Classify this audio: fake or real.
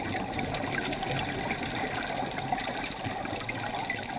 real